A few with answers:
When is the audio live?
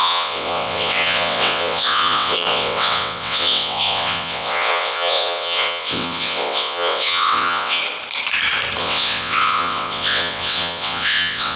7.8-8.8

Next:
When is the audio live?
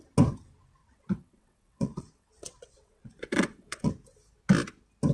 0.0-0.8; 3.9-5.1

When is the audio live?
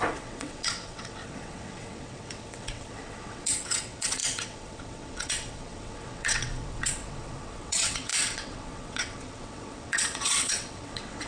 none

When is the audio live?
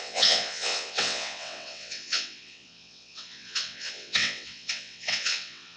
none